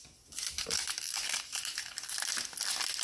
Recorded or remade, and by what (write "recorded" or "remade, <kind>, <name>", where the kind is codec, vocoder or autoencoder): recorded